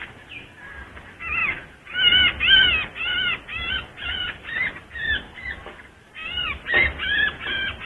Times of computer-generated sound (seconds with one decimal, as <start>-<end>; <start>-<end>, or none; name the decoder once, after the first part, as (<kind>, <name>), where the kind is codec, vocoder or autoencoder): none